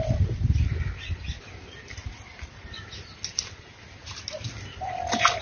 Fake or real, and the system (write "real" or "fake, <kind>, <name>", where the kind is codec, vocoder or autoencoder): real